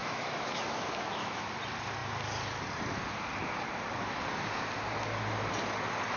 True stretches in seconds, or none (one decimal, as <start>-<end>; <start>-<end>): 1.5-6.2